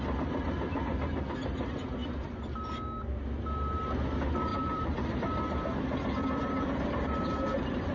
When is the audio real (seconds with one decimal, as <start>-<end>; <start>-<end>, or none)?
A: 0.0-4.5; 5.1-6.4